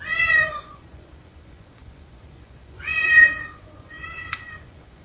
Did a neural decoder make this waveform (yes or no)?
yes